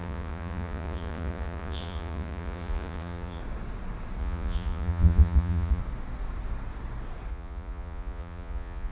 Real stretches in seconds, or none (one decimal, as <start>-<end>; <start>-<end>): 3.4-4.2; 5.8-7.3